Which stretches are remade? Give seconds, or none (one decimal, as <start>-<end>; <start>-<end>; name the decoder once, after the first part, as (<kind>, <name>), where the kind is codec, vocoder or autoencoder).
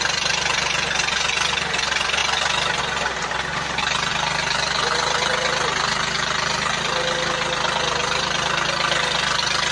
none